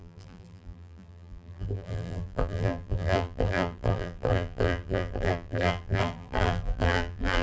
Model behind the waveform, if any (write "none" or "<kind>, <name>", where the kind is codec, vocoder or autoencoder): vocoder, BigVGAN v2